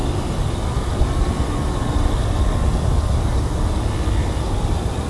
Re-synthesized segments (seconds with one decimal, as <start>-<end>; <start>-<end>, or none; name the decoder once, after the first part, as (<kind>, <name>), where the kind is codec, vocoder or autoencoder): none